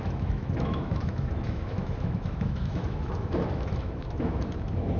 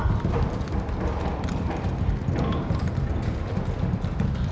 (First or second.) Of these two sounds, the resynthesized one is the first